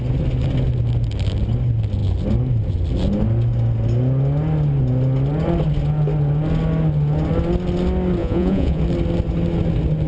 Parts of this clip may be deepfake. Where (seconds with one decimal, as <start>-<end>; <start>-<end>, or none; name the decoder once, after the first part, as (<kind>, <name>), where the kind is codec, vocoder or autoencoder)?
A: 8.2-8.8 (vocoder, Vocos)